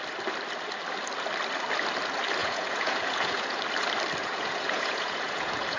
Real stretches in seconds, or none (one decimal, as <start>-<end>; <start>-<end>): 0.0-2.4; 3.6-4.2